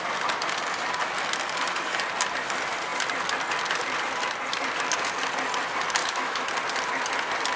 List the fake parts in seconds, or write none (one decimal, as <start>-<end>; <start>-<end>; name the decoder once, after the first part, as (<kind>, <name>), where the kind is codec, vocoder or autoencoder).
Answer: 6.0-6.5 (autoencoder, DAC-VAE)